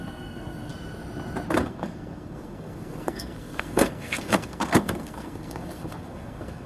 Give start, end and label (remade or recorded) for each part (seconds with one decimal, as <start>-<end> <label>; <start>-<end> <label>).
0.0-0.7 remade; 0.7-1.5 recorded; 1.5-6.7 remade